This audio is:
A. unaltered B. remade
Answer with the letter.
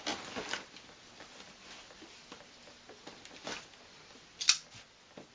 A